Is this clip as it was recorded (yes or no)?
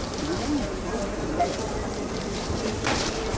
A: no